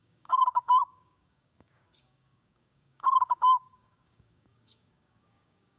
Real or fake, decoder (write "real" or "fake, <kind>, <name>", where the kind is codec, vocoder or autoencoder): fake, codec, DAC